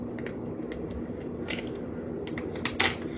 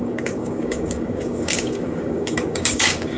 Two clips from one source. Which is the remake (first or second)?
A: second